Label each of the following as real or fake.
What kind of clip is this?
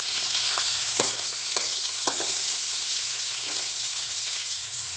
fake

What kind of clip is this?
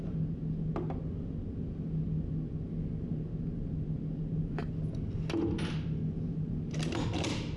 real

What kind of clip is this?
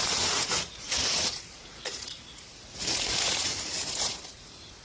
fake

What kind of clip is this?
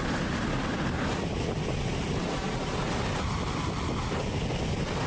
real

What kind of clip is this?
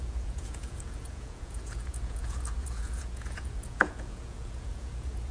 fake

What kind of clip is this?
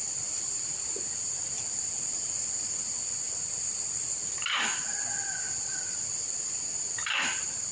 real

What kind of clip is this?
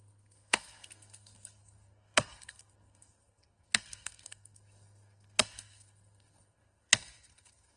fake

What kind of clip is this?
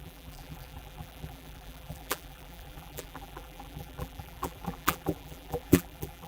fake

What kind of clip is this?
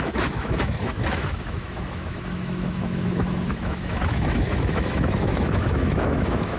fake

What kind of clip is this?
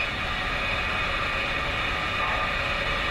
real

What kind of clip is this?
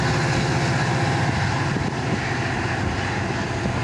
real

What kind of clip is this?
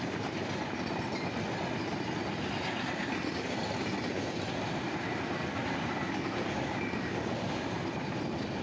real